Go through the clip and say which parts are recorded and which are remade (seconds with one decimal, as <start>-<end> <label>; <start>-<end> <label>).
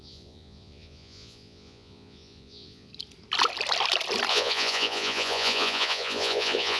0.0-2.9 remade; 2.9-4.3 recorded; 4.3-6.8 remade